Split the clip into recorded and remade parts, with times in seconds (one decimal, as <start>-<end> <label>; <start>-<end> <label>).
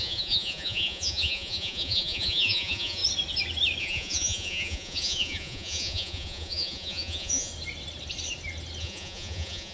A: 0.0-3.0 remade; 3.0-3.8 recorded; 3.8-7.5 remade; 7.5-8.8 recorded; 8.8-9.7 remade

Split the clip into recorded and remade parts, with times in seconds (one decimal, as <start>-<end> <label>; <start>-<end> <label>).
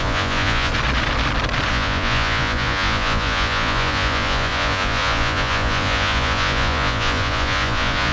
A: 0.0-0.7 remade; 0.7-1.7 recorded; 1.7-8.1 remade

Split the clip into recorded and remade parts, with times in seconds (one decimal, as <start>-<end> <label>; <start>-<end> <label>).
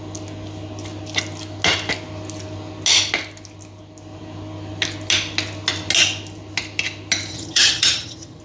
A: 0.0-7.3 recorded; 7.3-8.4 remade